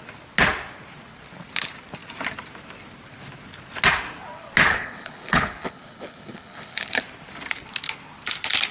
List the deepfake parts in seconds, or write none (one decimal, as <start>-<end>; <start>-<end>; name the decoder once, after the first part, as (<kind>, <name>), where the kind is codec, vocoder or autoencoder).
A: 4.7-7.0 (codec, HILCodec)